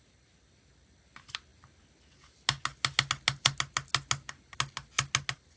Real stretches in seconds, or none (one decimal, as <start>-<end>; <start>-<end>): 0.0-5.6